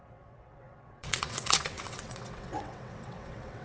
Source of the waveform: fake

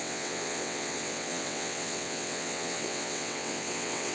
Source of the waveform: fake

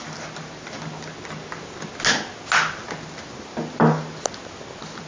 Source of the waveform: real